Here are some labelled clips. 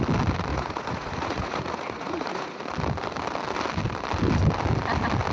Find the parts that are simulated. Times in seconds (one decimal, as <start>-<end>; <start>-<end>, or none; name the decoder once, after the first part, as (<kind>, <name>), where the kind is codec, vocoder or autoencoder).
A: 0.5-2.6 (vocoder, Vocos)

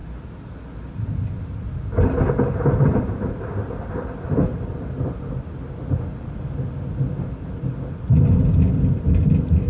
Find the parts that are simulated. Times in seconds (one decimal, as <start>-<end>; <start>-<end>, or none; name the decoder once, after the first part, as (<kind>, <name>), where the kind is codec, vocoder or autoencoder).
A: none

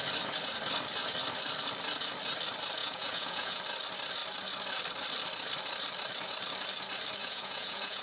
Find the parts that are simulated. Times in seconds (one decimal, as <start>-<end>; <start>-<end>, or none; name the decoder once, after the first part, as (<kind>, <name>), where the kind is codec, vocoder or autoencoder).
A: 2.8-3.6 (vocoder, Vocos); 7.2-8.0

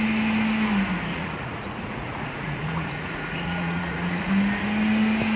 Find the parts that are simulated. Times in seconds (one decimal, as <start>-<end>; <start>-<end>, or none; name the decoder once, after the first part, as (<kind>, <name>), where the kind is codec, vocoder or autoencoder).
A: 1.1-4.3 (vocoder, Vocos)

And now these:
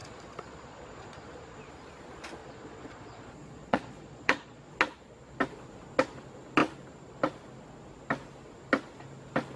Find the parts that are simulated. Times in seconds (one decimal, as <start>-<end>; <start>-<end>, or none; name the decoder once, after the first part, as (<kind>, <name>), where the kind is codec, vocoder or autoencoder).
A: 0.0-1.7 (vocoder, Vocos); 2.4-4.7

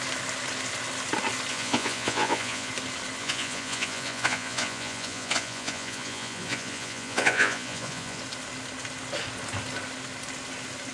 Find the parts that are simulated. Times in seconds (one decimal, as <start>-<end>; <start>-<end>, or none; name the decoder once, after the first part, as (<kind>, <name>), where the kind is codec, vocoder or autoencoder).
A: 1.5-2.7 (vocoder, Vocos); 3.2-8.2